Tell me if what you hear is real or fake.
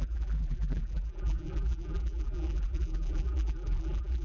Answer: fake